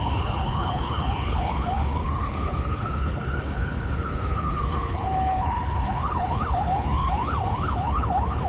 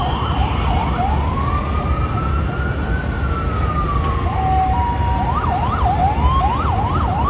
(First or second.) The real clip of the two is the second